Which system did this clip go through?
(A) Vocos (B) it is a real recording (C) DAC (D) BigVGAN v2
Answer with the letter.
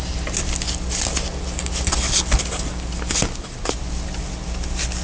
B